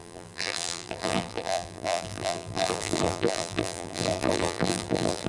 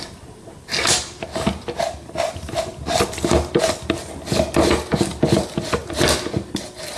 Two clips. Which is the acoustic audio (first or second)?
second